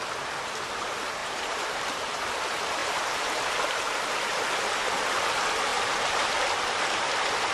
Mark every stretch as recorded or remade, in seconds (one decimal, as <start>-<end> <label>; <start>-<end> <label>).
0.0-1.2 recorded; 1.2-2.3 remade; 2.3-2.8 recorded; 2.8-3.8 remade; 3.8-5.7 recorded; 5.7-6.3 remade; 6.3-7.5 recorded